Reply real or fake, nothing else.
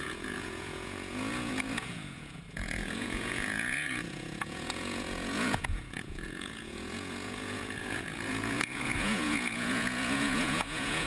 fake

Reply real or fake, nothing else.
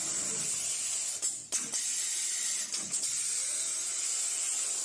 real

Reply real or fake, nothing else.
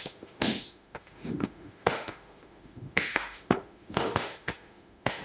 fake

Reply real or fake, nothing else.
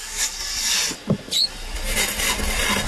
real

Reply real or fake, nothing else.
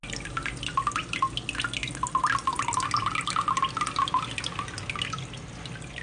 real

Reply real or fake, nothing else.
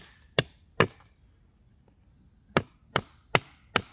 real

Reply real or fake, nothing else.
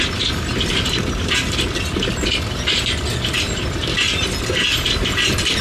real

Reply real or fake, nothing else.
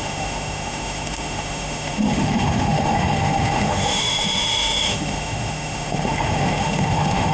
fake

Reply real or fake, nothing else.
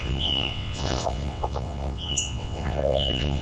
fake